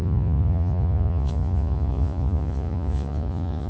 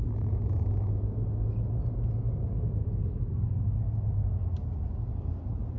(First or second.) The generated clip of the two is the first